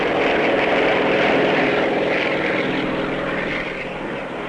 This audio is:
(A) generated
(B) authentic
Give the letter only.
A